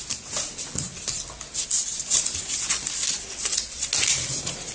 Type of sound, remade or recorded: recorded